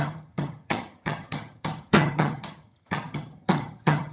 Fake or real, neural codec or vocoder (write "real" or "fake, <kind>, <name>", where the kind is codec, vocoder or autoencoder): fake, vocoder, HiFi-GAN